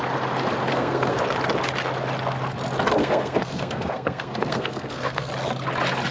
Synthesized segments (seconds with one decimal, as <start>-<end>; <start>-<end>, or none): 0.7-1.2; 3.0-5.3